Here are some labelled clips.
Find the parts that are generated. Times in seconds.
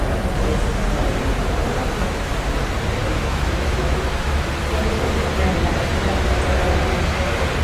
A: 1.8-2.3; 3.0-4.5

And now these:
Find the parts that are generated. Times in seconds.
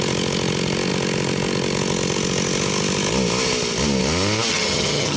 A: 4.5-5.2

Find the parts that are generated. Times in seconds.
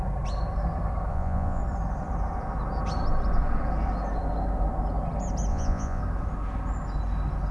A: 1.1-1.6; 5.5-6.0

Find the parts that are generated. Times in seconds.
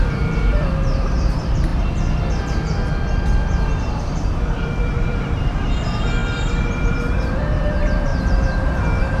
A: 0.0-1.7; 3.9-9.2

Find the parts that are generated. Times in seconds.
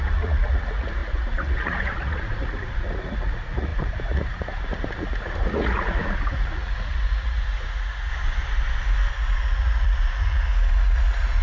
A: 0.0-8.1; 9.1-11.4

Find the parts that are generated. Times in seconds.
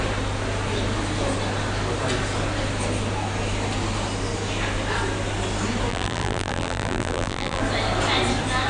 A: 5.9-7.6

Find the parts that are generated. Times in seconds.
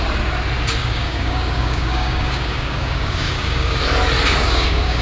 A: 0.8-3.8; 4.4-5.0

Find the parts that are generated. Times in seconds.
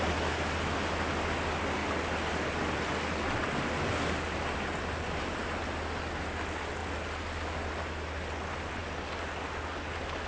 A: none